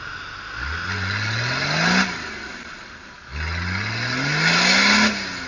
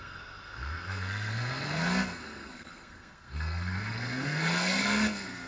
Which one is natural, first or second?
first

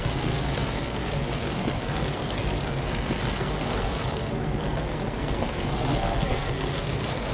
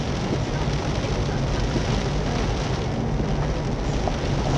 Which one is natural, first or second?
second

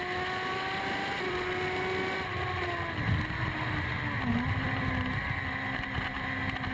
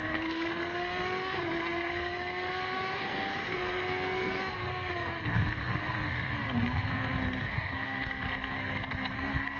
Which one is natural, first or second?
first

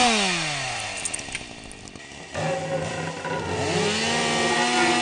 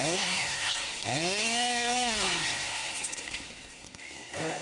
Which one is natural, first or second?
first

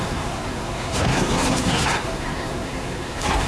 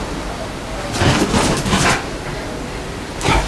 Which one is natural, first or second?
second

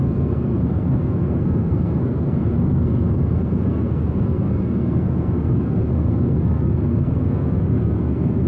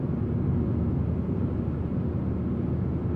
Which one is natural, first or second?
second